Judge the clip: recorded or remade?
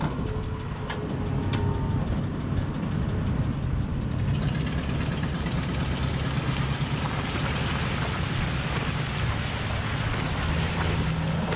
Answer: recorded